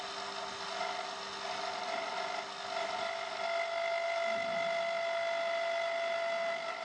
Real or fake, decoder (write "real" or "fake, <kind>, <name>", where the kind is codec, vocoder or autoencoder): real